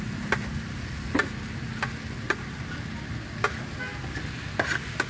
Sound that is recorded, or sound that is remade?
recorded